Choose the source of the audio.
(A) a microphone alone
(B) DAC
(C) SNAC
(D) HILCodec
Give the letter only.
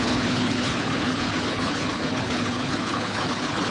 D